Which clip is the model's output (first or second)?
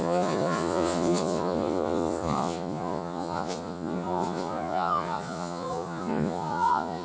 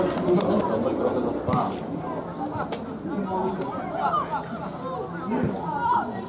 first